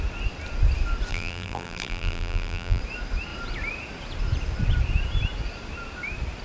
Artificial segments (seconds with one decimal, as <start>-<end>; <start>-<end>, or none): 1.1-2.8